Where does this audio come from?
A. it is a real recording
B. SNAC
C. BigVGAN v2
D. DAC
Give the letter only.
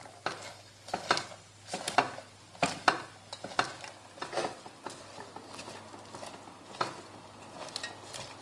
A